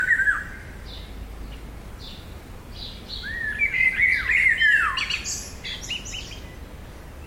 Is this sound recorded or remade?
recorded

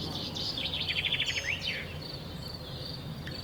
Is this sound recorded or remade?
remade